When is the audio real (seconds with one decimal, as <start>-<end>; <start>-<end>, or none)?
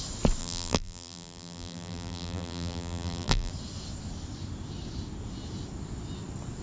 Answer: 0.0-0.4; 3.5-6.6